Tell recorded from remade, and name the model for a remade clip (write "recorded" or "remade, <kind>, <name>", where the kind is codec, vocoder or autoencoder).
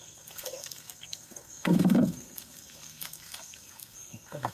remade, codec, SNAC